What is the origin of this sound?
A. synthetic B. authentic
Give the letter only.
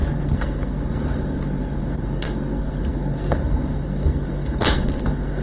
A